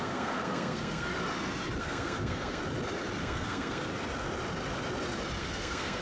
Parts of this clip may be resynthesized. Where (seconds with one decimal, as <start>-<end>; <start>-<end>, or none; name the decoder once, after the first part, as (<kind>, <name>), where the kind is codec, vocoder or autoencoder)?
0.0-1.1 (codec, SNAC); 1.8-2.6; 3.2-3.9; 5.4-6.0